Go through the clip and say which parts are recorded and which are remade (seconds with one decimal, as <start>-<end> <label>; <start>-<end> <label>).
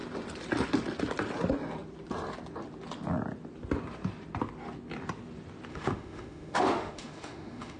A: 0.0-5.7 recorded; 5.7-7.8 remade